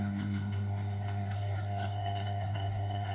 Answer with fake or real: fake